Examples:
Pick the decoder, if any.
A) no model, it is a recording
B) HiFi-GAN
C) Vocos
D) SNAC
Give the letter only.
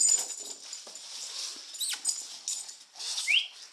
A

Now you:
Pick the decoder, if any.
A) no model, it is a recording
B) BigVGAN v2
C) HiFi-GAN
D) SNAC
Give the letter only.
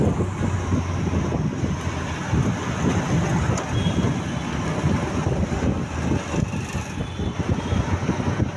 A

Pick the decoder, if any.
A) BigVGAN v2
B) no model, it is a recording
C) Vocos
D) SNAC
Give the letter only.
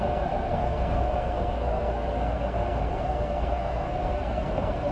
D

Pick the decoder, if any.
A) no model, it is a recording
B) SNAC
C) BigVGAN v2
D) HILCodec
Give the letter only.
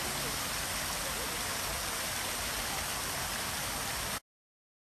A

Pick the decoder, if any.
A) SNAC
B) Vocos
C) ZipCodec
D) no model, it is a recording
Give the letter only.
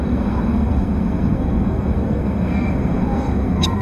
A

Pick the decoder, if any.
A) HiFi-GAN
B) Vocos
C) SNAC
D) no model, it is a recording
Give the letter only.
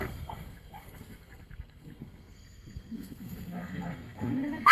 C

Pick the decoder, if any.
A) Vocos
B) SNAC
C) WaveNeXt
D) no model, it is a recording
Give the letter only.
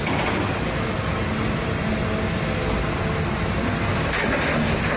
D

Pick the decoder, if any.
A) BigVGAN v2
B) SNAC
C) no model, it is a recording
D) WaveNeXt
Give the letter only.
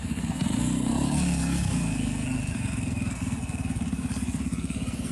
B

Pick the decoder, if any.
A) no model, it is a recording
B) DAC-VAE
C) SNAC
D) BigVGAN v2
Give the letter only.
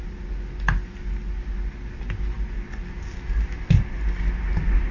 A